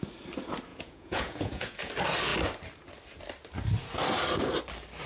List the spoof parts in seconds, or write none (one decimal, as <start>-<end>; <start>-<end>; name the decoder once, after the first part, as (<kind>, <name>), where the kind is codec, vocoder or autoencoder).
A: 0.7-1.9 (vocoder, Vocos)